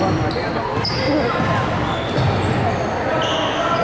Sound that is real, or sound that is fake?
real